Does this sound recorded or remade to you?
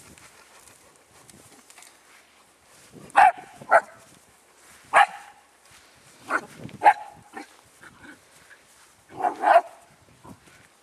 remade